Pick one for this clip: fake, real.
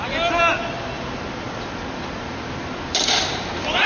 real